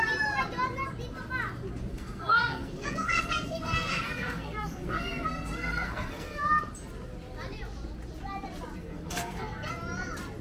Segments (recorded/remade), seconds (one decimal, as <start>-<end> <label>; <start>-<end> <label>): 0.0-1.9 recorded; 1.9-6.6 remade; 6.6-8.8 recorded; 8.8-9.7 remade; 9.7-10.4 recorded